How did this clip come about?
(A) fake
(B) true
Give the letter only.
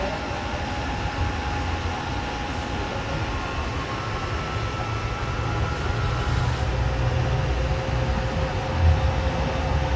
B